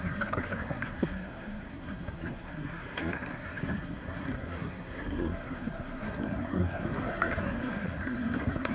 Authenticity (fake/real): fake